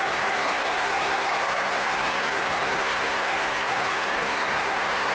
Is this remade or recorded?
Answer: remade